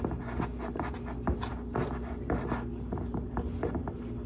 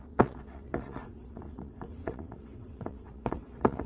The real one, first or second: first